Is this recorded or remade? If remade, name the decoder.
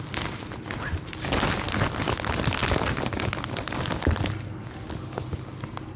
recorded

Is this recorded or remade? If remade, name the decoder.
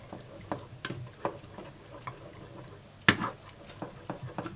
recorded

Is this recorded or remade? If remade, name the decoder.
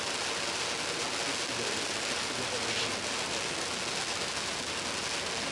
recorded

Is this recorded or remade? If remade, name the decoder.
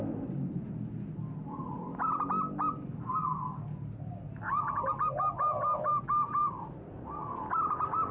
recorded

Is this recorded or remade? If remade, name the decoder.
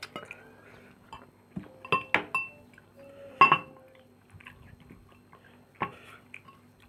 recorded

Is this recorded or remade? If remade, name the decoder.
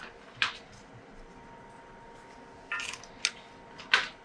recorded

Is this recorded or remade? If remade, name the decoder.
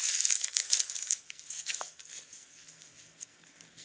remade, codec, SNAC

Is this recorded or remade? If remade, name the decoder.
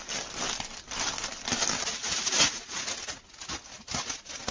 recorded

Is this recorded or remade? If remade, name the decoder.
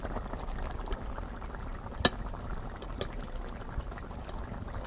recorded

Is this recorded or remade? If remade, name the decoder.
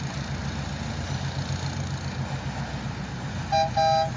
recorded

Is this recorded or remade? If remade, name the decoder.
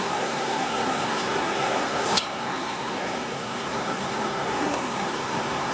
remade, codec, SNAC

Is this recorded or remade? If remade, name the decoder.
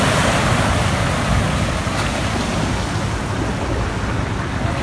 recorded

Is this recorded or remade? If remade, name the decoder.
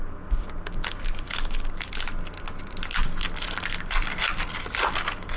recorded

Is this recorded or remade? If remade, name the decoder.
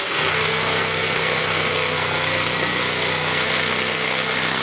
remade, codec, SNAC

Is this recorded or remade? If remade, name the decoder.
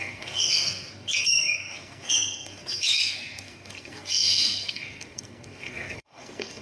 remade, codec, SNAC